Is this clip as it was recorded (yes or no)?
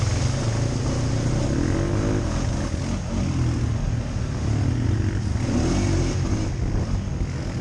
yes